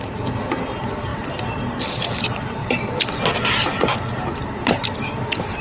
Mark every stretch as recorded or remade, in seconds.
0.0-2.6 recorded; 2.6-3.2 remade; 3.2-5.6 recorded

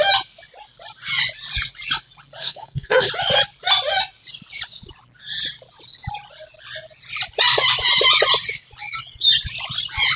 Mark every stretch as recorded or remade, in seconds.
0.0-2.4 recorded; 2.4-3.1 remade; 3.1-10.2 recorded

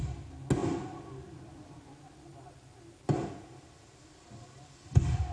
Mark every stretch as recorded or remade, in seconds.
0.0-2.3 recorded; 2.3-3.6 remade; 3.6-5.3 recorded

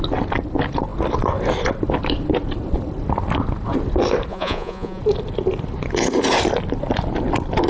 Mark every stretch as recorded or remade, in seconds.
0.0-4.3 recorded; 4.3-5.0 remade; 5.0-7.7 recorded

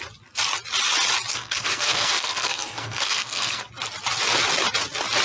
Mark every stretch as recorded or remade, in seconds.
0.0-1.3 recorded; 1.3-3.7 remade; 3.7-5.2 recorded